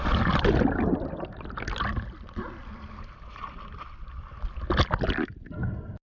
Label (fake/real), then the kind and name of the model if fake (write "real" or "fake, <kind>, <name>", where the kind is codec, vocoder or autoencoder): real